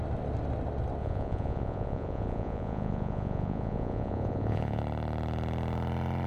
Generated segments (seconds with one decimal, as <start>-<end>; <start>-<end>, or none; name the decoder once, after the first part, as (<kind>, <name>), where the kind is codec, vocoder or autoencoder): 1.0-4.8 (vocoder, Vocos)